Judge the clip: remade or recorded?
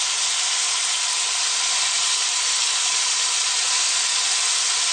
recorded